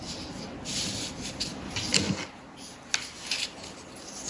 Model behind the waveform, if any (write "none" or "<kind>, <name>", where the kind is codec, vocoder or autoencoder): none